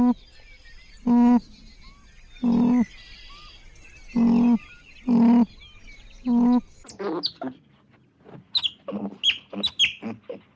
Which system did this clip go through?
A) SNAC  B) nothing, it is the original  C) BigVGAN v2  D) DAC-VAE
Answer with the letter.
B